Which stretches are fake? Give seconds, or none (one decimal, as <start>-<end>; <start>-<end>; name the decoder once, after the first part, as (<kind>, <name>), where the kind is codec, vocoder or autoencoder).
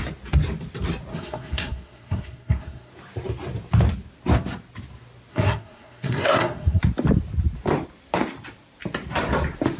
1.1-2.9 (codec, SNAC); 5.3-6.8